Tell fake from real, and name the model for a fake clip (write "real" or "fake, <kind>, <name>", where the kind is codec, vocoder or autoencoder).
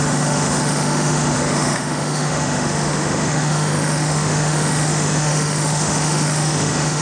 fake, autoencoder, DAC-VAE